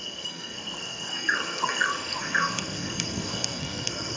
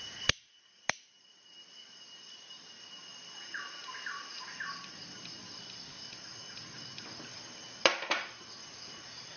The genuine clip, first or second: second